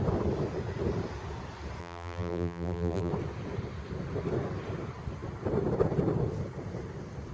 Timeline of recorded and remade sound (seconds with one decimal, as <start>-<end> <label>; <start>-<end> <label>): 0.0-1.8 recorded; 1.8-3.1 remade; 3.1-7.3 recorded